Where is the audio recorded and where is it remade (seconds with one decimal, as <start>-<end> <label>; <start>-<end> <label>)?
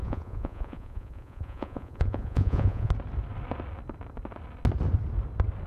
0.0-2.9 remade; 2.9-5.7 recorded